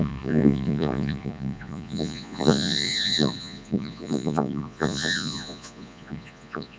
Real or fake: fake